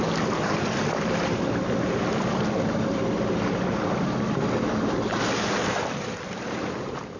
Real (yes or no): no